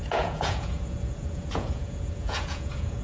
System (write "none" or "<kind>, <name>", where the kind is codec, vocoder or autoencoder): vocoder, Vocos